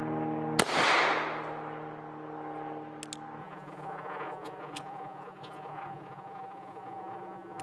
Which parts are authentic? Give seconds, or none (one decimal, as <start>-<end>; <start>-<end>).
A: 0.0-3.4